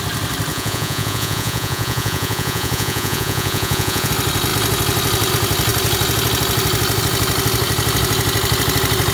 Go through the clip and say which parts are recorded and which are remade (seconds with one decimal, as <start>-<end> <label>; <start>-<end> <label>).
0.0-0.5 recorded; 0.5-4.1 remade; 4.1-9.1 recorded